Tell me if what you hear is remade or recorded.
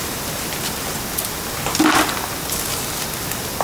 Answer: recorded